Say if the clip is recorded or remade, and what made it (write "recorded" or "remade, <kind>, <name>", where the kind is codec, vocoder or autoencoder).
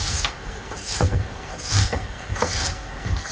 remade, codec, SNAC